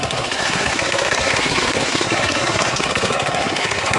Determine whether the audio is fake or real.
fake